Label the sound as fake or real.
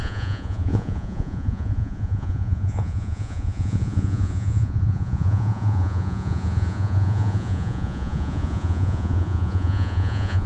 fake